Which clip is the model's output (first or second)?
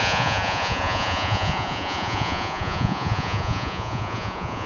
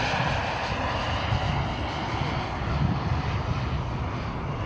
first